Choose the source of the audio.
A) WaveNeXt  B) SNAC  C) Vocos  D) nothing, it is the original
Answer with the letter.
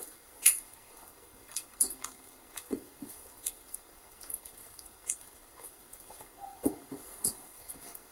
B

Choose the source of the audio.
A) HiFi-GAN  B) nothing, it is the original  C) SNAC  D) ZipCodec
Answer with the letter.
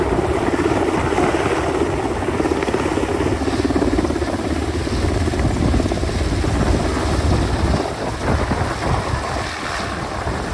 B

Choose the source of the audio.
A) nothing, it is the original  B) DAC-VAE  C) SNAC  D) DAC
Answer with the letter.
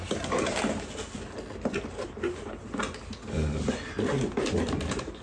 A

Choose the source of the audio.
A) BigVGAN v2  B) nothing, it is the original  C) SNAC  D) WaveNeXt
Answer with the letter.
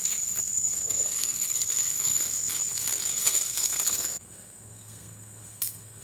C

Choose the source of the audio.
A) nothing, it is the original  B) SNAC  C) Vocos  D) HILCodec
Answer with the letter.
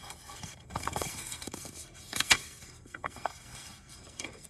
B